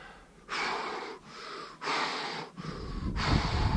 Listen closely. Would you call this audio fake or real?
real